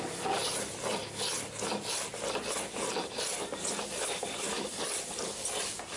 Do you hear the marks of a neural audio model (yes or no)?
no